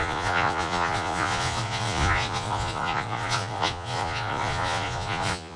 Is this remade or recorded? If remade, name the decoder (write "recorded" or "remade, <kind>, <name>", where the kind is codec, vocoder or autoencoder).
remade, vocoder, Vocos